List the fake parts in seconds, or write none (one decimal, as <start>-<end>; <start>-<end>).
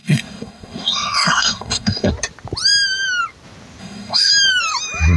0.0-2.1; 3.8-4.3